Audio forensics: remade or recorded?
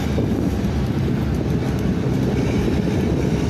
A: recorded